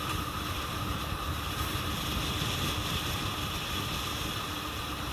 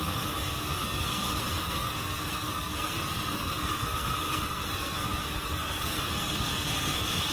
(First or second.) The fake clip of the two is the second